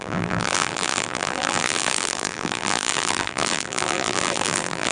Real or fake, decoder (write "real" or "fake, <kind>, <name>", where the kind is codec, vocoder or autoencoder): fake, vocoder, BigVGAN v2